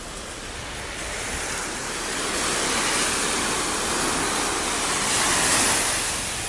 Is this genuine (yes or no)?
yes